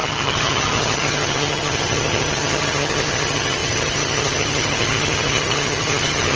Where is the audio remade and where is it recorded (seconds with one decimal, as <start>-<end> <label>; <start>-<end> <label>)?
0.0-6.4 remade